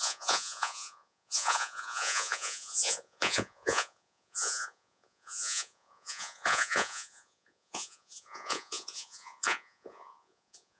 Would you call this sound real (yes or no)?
no